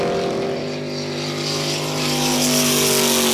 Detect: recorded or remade recorded